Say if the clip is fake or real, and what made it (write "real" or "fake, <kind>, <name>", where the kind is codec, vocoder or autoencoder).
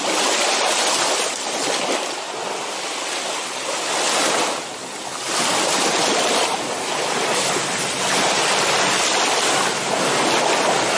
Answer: real